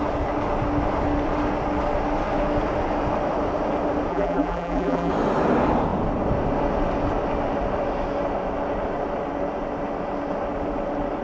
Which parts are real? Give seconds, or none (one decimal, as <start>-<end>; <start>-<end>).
0.0-4.1; 5.1-11.2